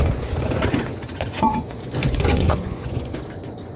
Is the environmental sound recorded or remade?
remade